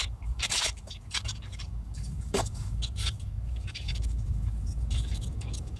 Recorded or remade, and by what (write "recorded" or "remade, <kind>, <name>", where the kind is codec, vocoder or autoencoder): remade, codec, DAC